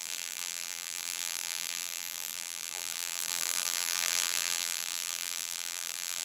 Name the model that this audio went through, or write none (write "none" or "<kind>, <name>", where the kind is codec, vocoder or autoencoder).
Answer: vocoder, BigVGAN v2